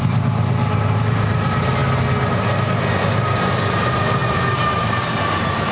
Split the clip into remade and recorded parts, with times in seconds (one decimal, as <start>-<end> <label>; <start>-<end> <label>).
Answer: 0.0-1.8 remade; 1.8-3.1 recorded; 3.1-5.7 remade